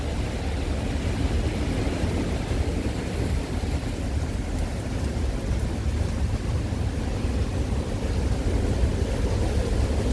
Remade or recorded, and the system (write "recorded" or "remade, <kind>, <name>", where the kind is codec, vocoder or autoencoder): recorded